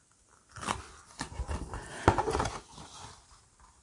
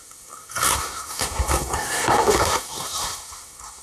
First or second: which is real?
first